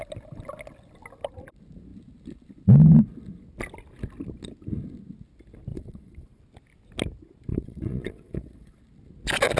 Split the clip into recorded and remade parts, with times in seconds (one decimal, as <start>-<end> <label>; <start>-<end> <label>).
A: 0.0-5.7 recorded; 5.7-6.4 remade; 6.4-7.5 recorded; 7.5-8.8 remade; 8.8-9.6 recorded